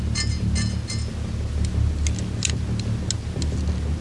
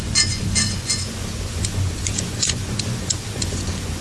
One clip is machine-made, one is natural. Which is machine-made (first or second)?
second